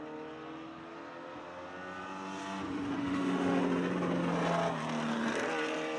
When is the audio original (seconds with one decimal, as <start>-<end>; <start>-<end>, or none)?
0.0-3.0; 3.6-6.0